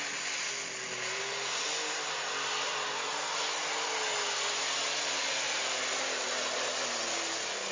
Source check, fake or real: real